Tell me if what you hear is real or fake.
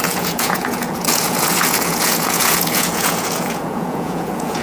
fake